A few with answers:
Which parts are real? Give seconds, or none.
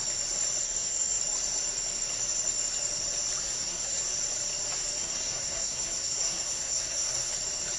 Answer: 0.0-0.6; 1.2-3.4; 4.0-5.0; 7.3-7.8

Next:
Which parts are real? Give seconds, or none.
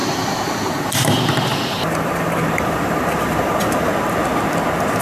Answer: 3.9-5.0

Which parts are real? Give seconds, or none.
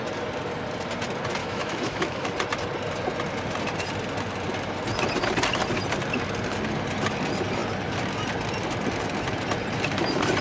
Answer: 0.0-1.4; 2.3-10.4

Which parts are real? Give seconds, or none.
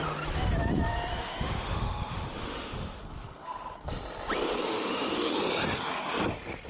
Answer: 0.0-1.1; 3.0-4.7; 5.4-6.7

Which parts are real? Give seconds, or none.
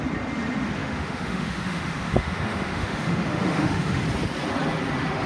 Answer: 0.0-0.8; 4.0-5.3